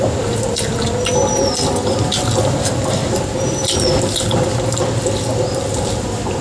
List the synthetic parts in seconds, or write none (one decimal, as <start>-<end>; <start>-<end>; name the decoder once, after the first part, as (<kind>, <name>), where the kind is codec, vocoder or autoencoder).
none